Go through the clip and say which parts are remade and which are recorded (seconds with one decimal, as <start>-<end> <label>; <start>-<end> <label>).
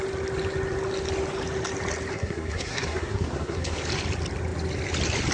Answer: 0.0-2.1 recorded; 2.1-3.8 remade; 3.8-5.3 recorded